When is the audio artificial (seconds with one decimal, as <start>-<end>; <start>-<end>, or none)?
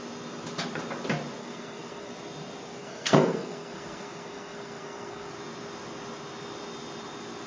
1.4-2.1; 2.8-5.3